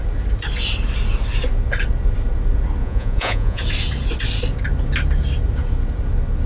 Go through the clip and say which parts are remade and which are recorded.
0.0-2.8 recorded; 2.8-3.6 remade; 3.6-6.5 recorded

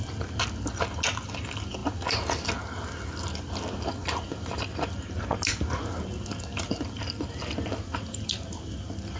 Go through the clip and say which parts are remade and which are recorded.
0.0-9.2 recorded

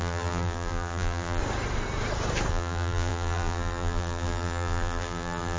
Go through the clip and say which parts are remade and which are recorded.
0.0-1.4 remade; 1.4-2.5 recorded; 2.5-5.6 remade

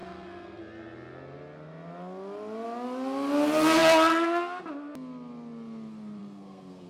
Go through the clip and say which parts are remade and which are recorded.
0.0-0.6 remade; 0.6-6.2 recorded; 6.2-6.9 remade

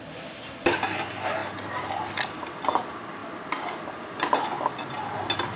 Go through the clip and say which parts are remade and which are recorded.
0.0-5.6 recorded

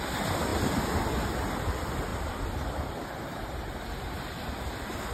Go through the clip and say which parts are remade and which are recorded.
0.0-2.1 recorded; 2.1-4.4 remade; 4.4-5.1 recorded